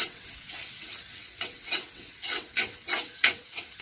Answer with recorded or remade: remade